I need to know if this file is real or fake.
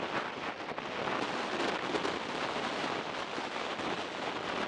real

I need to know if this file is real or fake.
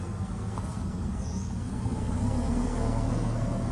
fake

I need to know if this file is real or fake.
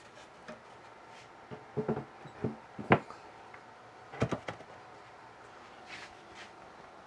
real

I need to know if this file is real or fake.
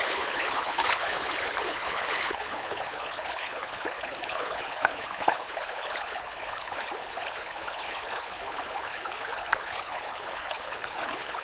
fake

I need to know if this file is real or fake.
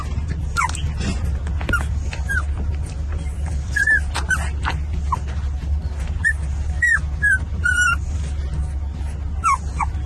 real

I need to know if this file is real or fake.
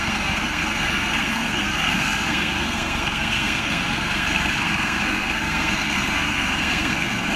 fake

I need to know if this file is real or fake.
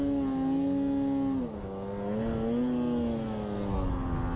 real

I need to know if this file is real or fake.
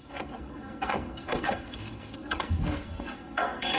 fake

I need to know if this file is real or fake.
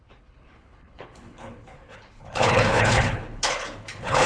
fake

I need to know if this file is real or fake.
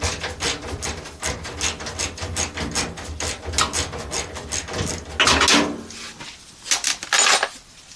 real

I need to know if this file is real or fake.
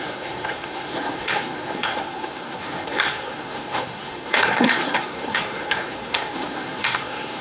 fake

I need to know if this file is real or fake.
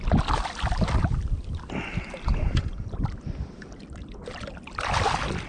real